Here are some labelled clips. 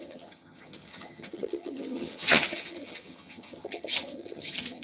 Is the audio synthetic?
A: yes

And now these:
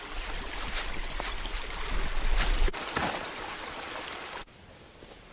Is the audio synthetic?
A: no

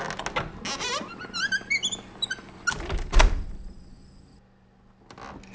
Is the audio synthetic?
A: no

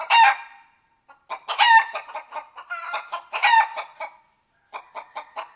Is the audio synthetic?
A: no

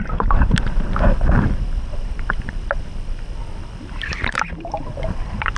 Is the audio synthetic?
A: no